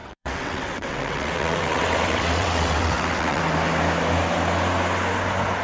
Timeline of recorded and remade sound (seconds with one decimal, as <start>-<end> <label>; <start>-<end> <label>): 0.0-3.4 remade; 3.4-5.6 recorded